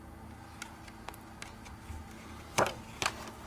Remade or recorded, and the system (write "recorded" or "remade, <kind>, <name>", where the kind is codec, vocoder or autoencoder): recorded